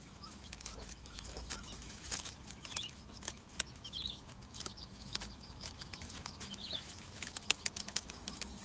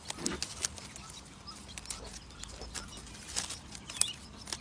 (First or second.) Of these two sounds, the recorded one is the second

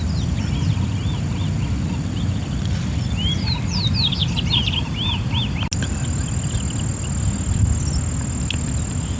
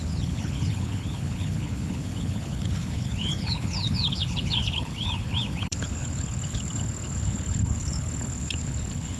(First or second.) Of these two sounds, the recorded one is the first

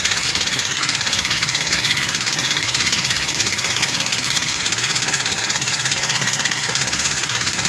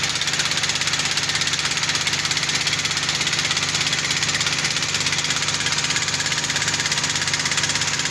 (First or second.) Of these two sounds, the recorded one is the second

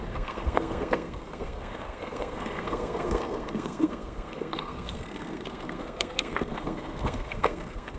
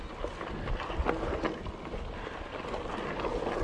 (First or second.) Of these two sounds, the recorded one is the second